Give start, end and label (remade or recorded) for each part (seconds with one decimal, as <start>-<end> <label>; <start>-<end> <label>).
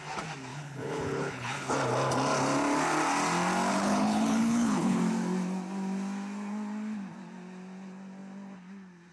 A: 0.0-0.5 recorded; 0.5-1.7 remade; 1.7-3.7 recorded; 3.7-5.0 remade; 5.0-9.1 recorded